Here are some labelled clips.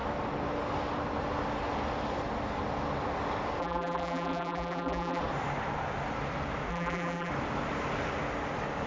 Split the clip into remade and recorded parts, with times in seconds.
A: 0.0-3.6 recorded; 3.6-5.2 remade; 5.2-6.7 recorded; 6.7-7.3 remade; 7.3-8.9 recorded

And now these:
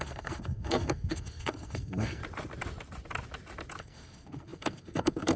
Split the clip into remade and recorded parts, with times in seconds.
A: 0.0-2.2 remade; 2.2-3.8 recorded; 3.8-5.4 remade

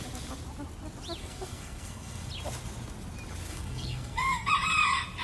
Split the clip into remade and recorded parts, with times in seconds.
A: 0.0-1.2 recorded; 1.2-2.3 remade; 2.3-3.5 recorded; 3.5-4.5 remade; 4.5-5.2 recorded

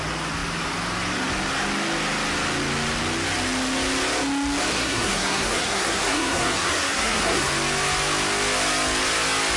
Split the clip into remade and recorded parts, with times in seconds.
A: 0.0-4.7 recorded; 4.7-7.5 remade; 7.5-9.6 recorded

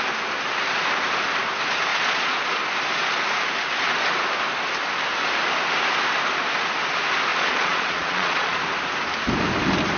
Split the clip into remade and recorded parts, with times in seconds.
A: 0.0-1.9 recorded; 1.9-2.5 remade; 2.5-7.3 recorded; 7.3-8.6 remade; 8.6-10.0 recorded

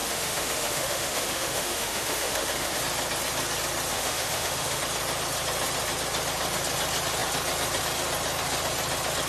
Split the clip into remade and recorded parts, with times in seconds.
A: 0.0-2.8 remade; 2.8-3.9 recorded; 3.9-4.8 remade; 4.8-9.3 recorded

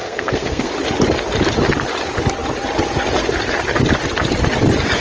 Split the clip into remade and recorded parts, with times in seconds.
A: 0.0-0.7 remade; 0.7-5.0 recorded